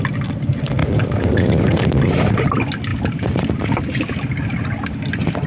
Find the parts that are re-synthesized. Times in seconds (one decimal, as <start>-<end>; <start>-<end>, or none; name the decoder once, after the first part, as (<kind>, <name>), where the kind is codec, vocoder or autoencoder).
0.8-2.5 (vocoder, BigVGAN v2); 2.9-3.6